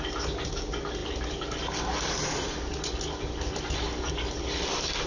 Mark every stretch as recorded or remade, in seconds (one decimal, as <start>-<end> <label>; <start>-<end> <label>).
0.0-5.1 recorded